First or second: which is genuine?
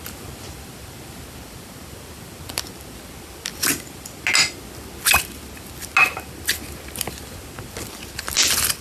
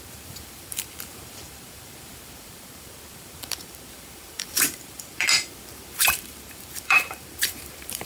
first